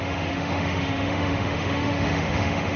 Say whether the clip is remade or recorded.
remade